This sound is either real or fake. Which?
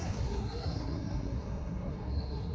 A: fake